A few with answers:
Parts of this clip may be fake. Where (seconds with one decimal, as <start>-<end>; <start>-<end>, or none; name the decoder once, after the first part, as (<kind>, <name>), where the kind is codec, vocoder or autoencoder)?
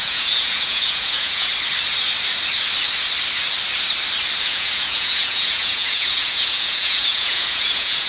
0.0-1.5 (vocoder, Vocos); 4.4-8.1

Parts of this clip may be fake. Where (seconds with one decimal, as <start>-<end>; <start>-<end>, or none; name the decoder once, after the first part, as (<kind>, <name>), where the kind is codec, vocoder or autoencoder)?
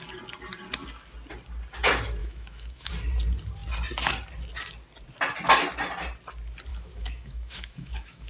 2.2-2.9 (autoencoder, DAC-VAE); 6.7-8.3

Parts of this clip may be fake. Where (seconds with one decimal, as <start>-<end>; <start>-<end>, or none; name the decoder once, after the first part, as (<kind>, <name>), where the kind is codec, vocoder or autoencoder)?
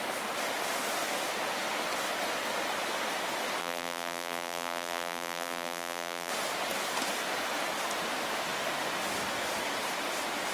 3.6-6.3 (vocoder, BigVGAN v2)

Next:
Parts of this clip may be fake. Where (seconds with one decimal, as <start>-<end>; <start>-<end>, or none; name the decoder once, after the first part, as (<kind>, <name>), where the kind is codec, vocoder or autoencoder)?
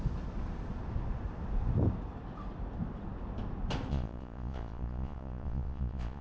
3.9-6.2 (vocoder, Vocos)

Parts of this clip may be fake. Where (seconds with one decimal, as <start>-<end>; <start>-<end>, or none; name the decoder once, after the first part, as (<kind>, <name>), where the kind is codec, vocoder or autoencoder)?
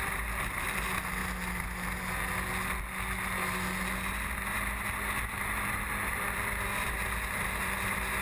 0.0-1.2 (vocoder, BigVGAN v2); 6.1-8.2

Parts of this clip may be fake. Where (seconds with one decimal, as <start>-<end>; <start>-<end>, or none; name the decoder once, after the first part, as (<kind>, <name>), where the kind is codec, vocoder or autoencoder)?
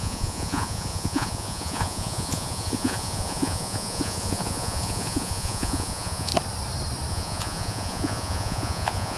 0.0-6.3 (vocoder, Vocos); 7.1-9.2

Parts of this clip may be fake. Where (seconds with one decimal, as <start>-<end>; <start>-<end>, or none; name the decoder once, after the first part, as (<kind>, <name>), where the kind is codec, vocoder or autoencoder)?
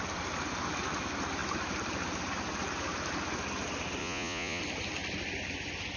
4.0-4.6 (vocoder, Vocos)